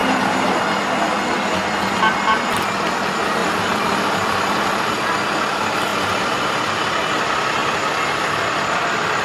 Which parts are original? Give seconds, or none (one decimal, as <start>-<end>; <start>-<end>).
0.6-3.4; 4.8-5.9; 6.6-9.2